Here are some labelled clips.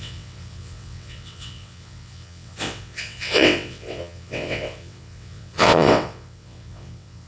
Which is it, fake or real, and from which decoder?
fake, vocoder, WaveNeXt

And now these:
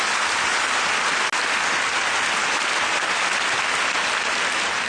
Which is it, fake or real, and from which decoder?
real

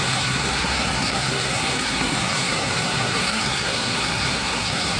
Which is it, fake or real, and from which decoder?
fake, codec, SNAC